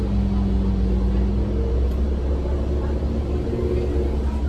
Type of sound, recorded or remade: recorded